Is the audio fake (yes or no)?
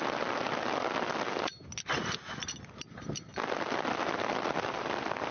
no